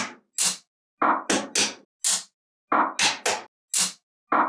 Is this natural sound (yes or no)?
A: yes